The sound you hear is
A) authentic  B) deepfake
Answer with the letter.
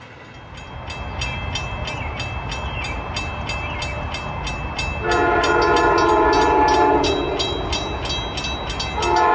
A